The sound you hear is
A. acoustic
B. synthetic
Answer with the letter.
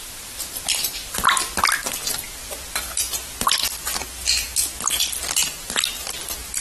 A